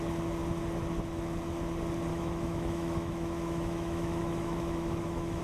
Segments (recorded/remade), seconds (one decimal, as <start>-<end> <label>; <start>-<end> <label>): 0.0-2.1 recorded; 2.1-5.4 remade